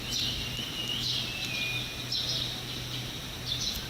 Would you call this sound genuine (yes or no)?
yes